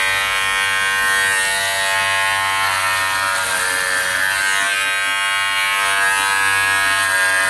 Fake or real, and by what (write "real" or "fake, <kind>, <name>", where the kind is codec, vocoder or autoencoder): real